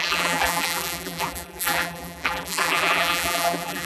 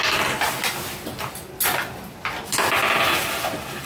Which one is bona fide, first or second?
second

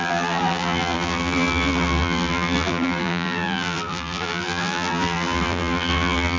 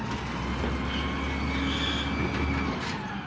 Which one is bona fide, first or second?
second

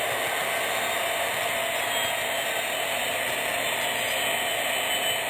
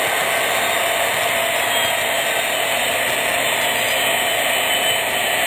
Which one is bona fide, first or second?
first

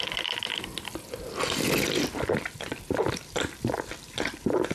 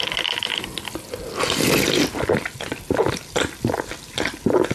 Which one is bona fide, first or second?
second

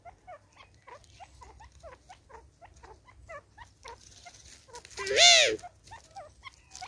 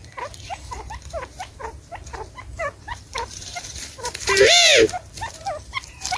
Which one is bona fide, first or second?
first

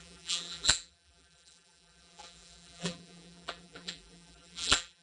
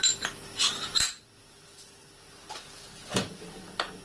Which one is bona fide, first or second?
second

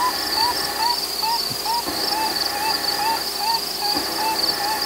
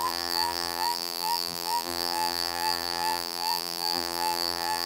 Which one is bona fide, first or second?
first